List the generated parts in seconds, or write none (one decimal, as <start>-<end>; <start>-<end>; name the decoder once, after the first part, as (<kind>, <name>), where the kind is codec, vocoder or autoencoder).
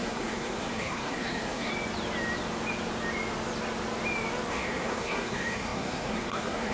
0.0-1.7 (codec, SNAC); 4.5-6.7